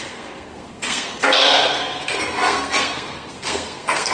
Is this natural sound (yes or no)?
no